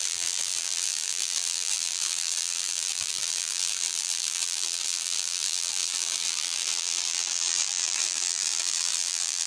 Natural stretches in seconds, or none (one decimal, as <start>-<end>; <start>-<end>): none